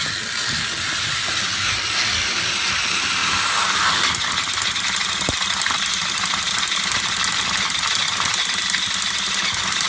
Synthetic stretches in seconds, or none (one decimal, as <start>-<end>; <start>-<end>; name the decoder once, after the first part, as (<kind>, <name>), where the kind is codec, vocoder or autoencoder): none